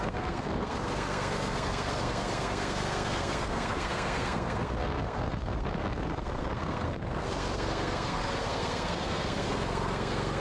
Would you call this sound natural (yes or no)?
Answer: no